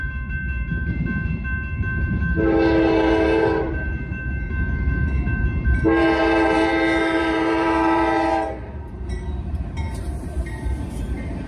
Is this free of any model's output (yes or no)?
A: no